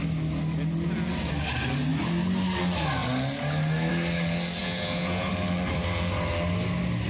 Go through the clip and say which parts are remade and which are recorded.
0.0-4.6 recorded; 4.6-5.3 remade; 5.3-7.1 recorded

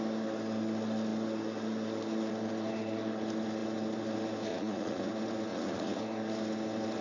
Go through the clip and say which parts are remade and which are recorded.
0.0-4.5 recorded; 4.5-5.1 remade; 5.1-5.5 recorded; 5.5-6.0 remade; 6.0-7.0 recorded